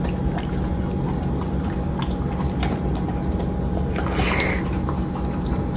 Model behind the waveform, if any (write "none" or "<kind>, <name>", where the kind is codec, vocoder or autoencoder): none